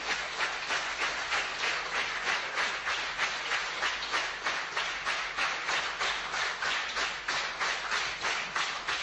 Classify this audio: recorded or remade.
remade